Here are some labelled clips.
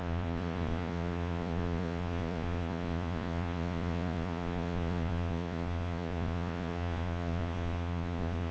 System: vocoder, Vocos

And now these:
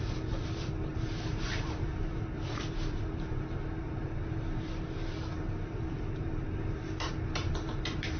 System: vocoder, BigVGAN v2